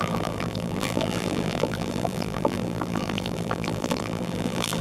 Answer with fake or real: fake